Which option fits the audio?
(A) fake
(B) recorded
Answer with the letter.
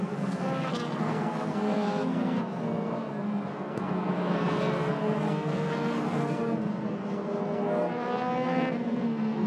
A